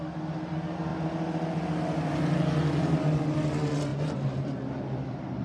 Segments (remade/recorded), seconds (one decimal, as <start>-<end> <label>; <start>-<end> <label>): 0.0-3.9 recorded; 3.9-4.5 remade; 4.5-5.4 recorded